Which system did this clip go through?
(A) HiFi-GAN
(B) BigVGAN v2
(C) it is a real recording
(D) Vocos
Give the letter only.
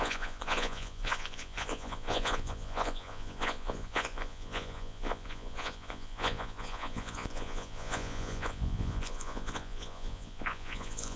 D